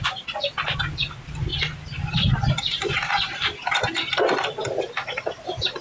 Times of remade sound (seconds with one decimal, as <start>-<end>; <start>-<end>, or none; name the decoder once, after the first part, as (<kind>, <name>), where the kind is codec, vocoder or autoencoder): none